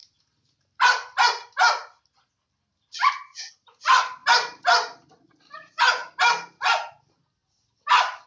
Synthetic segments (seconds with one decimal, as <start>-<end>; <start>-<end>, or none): none

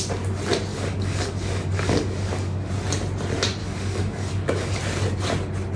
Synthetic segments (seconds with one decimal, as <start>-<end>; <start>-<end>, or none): 0.7-2.7; 3.6-4.8

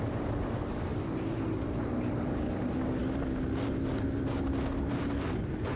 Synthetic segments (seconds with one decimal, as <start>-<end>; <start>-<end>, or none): none

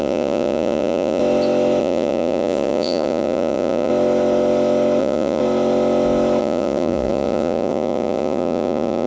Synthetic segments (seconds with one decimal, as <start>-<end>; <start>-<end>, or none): 0.0-1.2; 1.8-3.9; 5.0-5.4; 6.4-9.1

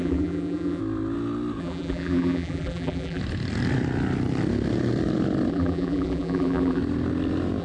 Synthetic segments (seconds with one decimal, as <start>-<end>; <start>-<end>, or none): 0.0-0.8; 1.6-3.2; 5.5-6.8

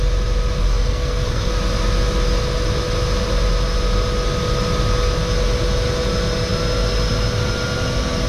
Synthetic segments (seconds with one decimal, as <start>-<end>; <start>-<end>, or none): 0.6-1.5